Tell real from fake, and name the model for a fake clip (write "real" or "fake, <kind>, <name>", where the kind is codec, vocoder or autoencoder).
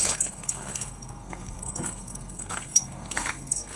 fake, codec, SNAC